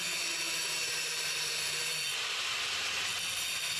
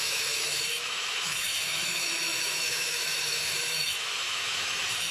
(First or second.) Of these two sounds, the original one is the first